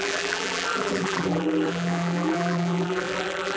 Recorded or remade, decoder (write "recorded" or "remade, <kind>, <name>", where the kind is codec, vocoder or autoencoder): remade, vocoder, BigVGAN v2